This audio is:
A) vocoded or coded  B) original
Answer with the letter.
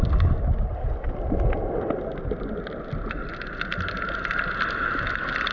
B